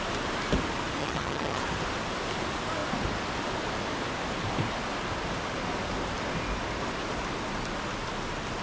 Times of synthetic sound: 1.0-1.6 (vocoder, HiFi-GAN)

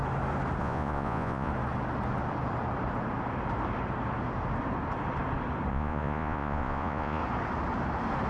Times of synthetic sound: 0.6-1.5 (vocoder, Vocos); 5.7-7.2

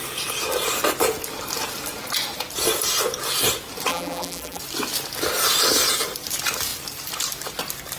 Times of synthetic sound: 3.9-4.6 (vocoder, BigVGAN v2)

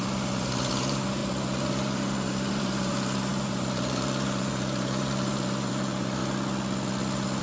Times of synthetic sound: 0.0-6.2 (vocoder, BigVGAN v2)

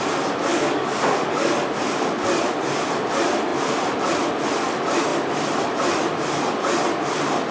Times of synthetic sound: 0.5-1.5 (codec, DAC)